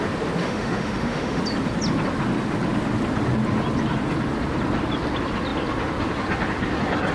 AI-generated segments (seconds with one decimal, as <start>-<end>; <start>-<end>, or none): 0.4-1.4